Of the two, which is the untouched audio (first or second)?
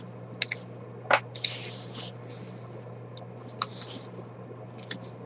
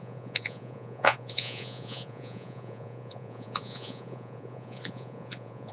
first